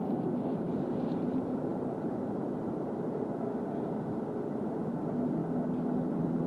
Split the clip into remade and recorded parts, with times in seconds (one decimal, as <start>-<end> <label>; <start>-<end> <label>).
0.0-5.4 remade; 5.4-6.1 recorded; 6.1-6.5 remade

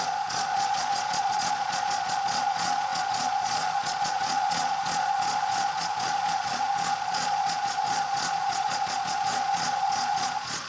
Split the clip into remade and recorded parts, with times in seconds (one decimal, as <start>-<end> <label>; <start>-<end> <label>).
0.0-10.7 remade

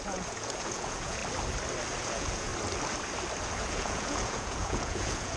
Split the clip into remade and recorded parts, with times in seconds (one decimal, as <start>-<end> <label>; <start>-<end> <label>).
0.0-1.2 remade; 1.2-2.0 recorded; 2.0-2.5 remade; 2.5-3.4 recorded; 3.4-5.4 remade